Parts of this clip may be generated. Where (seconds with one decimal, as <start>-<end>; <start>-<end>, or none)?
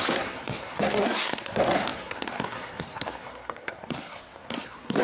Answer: 0.0-5.0